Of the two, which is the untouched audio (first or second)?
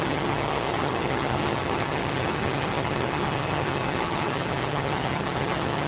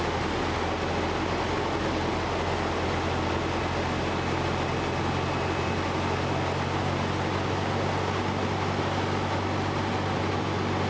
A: second